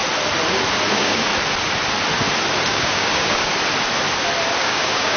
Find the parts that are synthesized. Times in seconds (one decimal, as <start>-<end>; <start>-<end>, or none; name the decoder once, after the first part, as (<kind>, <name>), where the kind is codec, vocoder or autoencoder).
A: 0.9-1.3 (codec, DAC); 2.7-3.5; 4.6-5.2